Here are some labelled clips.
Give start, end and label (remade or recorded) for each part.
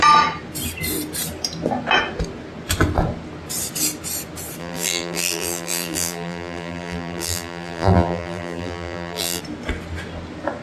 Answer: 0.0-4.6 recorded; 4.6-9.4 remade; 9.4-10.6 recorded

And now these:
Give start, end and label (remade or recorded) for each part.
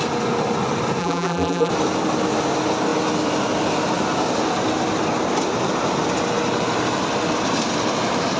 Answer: 0.0-1.0 recorded; 1.0-1.7 remade; 1.7-8.4 recorded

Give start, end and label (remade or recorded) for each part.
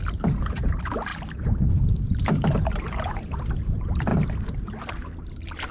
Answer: 0.0-4.1 remade; 4.1-5.3 recorded; 5.3-5.7 remade